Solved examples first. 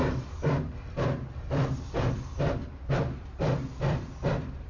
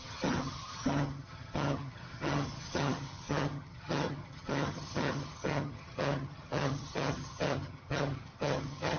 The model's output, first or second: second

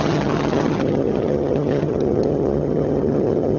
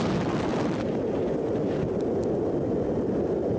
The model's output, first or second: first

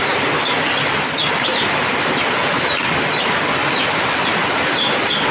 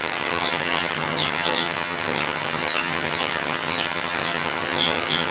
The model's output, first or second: second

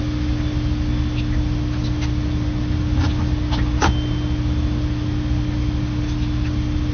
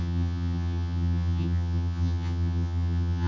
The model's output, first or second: second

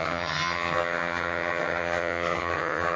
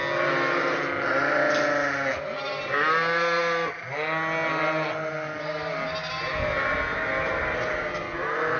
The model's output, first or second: first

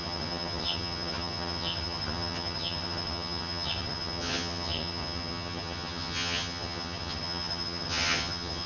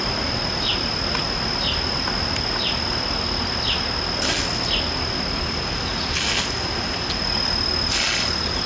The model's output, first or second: first